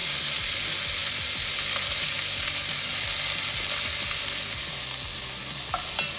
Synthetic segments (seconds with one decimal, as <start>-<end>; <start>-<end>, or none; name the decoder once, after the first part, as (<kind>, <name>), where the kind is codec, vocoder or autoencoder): none